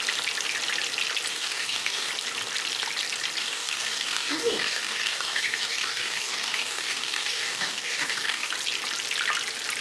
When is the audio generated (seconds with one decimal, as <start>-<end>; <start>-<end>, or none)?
1.3-2.1; 3.4-8.5